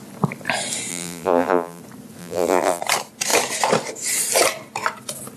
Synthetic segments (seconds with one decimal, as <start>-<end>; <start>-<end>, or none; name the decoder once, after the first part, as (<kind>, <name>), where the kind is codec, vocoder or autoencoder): 0.9-1.8 (vocoder, BigVGAN v2); 2.2-2.8